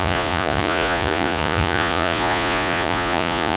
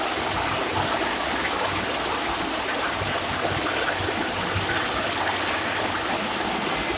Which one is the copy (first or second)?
first